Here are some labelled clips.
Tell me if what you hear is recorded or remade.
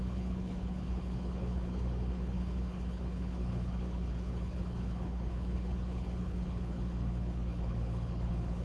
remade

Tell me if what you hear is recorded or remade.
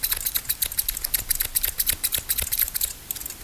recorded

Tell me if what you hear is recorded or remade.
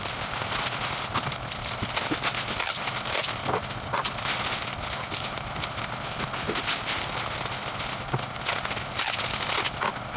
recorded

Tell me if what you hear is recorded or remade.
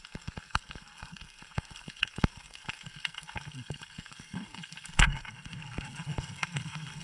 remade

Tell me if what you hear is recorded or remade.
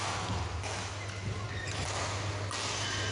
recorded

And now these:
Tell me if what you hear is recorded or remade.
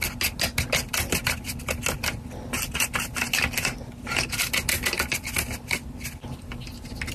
recorded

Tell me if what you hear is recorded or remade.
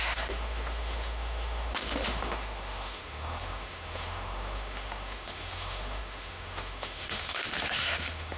remade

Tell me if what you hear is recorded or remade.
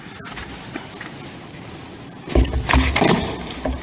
recorded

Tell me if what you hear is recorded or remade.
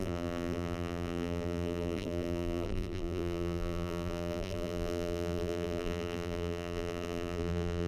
remade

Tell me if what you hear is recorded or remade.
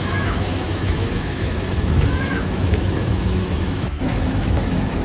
remade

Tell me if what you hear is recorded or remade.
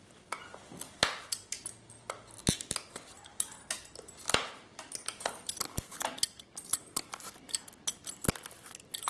recorded